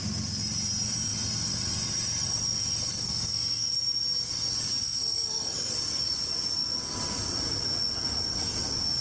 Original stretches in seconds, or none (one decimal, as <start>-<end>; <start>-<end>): 0.0-2.9; 3.7-4.8; 5.7-9.0